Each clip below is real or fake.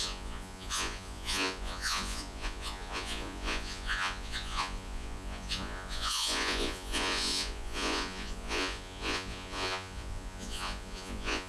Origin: fake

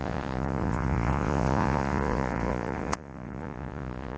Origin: fake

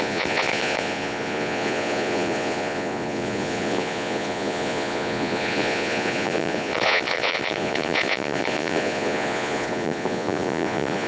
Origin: fake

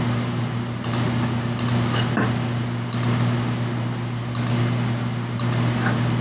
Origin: real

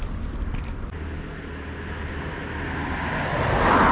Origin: real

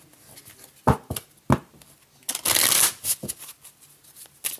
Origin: real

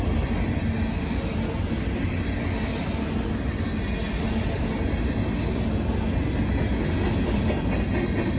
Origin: real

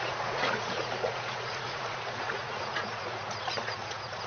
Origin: fake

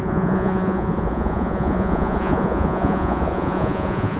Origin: fake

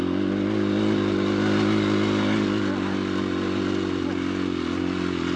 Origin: real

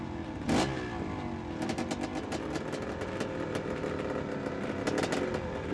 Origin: real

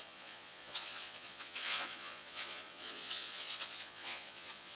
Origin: fake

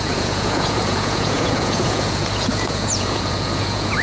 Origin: fake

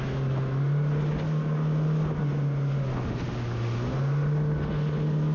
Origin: real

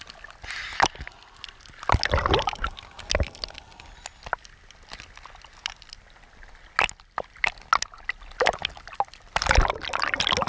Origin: real